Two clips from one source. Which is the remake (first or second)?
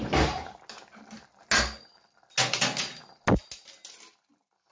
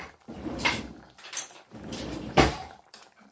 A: second